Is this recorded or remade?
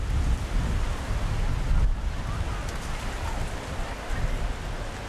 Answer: recorded